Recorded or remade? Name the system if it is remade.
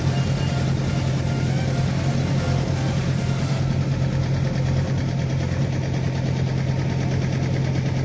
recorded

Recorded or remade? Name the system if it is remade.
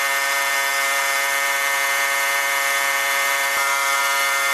remade, vocoder, BigVGAN v2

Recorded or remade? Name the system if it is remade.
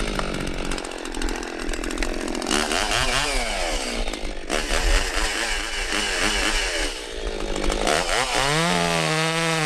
recorded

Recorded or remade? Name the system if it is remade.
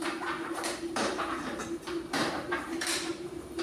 remade, vocoder, BigVGAN v2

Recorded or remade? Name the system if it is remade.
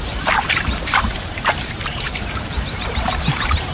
remade, vocoder, BigVGAN v2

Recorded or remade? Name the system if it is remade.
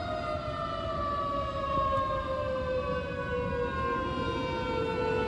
recorded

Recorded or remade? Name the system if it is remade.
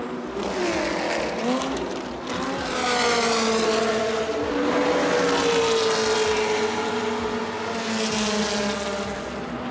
recorded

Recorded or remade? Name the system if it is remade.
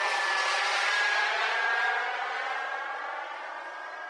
recorded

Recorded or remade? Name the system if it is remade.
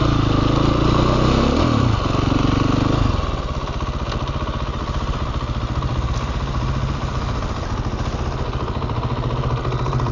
recorded